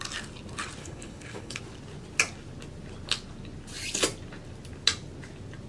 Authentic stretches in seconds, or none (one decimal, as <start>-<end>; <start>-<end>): 0.0-0.8; 1.6-5.7